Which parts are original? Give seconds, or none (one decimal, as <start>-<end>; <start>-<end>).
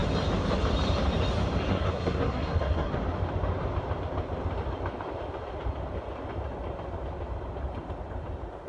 0.0-1.7; 2.9-8.7